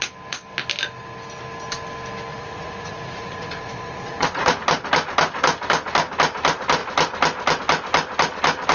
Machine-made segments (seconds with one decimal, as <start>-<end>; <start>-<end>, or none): 2.3-4.6